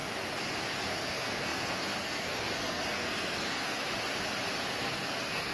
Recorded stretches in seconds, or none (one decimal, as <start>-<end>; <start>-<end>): 0.0-0.8; 3.8-4.8